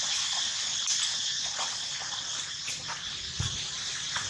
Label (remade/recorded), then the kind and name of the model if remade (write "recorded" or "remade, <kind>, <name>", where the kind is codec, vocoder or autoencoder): recorded